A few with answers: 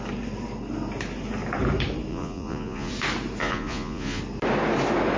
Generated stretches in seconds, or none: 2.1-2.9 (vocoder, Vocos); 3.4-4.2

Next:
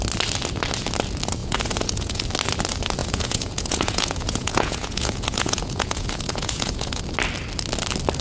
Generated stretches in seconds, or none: 1.4-2.2 (vocoder, Vocos); 3.0-7.0

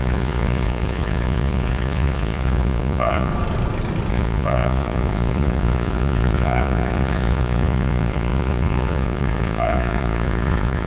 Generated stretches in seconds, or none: 0.0-3.3 (vocoder, Vocos); 4.1-10.9